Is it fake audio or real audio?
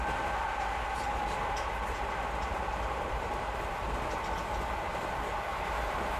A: real